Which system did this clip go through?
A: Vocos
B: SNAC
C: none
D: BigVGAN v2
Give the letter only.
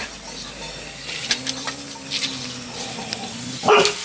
C